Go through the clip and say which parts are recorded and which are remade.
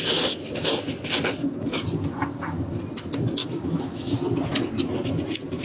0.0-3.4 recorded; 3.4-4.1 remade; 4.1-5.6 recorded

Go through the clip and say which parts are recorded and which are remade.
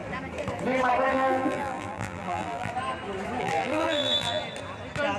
0.0-1.1 recorded; 1.1-2.7 remade; 2.7-3.4 recorded; 3.4-4.4 remade; 4.4-5.2 recorded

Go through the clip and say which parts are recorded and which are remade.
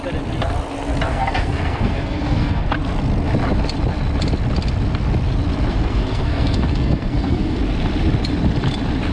0.0-1.1 recorded; 1.1-2.7 remade; 2.7-5.7 recorded; 5.7-7.6 remade; 7.6-9.1 recorded